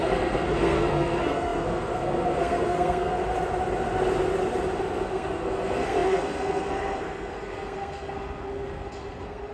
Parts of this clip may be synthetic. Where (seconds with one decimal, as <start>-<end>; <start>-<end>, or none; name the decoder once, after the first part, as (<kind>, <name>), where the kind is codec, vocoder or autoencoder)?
0.0-3.2 (codec, SNAC); 4.8-9.5